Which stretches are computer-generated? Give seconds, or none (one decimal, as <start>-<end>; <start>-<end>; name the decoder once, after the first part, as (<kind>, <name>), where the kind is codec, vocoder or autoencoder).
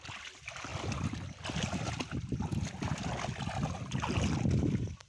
0.0-0.7 (vocoder, BigVGAN v2); 3.8-5.1